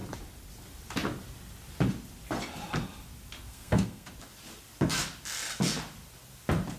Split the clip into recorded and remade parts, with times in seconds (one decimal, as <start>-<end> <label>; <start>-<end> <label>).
0.0-3.5 recorded; 3.5-4.1 remade; 4.1-6.8 recorded